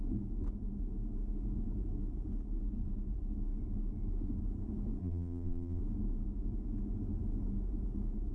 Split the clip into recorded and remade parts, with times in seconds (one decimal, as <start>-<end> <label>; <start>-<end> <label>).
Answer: 0.0-5.0 recorded; 5.0-5.8 remade; 5.8-8.3 recorded